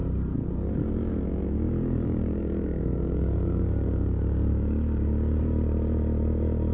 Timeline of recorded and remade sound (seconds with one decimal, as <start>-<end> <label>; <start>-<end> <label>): 0.0-2.1 recorded; 2.1-5.4 remade; 5.4-6.7 recorded